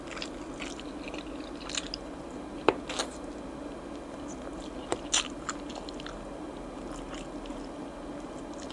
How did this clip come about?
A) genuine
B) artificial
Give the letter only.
A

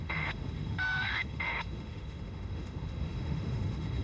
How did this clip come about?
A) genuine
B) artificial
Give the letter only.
B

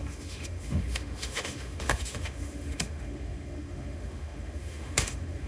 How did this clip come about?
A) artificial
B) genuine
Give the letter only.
A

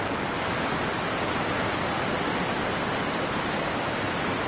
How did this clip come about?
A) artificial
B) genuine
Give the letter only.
B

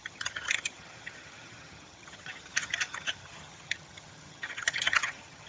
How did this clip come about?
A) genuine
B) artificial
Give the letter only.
B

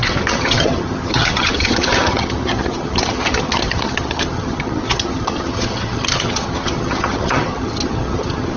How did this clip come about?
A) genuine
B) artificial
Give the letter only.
B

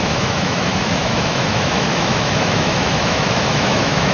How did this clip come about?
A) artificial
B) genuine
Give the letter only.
A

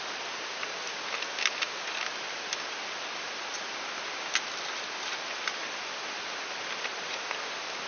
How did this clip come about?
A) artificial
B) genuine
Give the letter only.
B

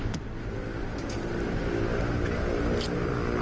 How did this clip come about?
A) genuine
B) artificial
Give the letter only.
A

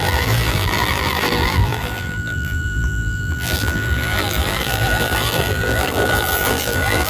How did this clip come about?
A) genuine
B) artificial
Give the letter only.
B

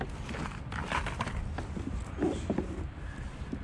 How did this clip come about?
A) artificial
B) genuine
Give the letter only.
A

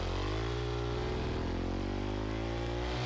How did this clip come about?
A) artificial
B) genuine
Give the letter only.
B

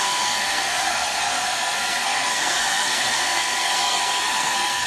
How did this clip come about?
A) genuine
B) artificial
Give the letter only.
B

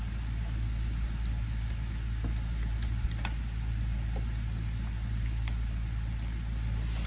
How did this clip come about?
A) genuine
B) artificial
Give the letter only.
A